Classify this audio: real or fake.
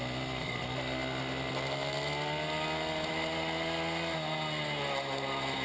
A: real